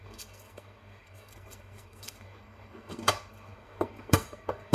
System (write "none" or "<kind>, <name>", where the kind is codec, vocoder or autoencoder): codec, SNAC